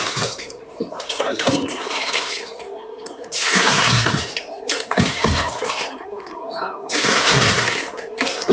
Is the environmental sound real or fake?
fake